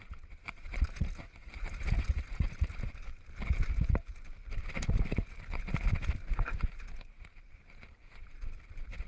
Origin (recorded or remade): recorded